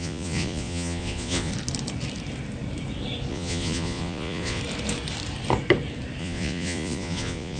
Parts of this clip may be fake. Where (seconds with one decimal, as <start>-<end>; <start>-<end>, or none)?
0.0-1.5; 3.3-4.6; 6.2-7.6